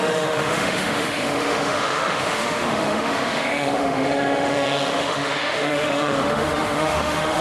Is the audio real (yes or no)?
no